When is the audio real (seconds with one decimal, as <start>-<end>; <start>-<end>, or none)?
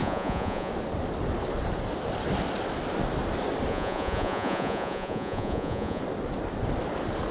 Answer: 0.7-3.7; 6.0-7.3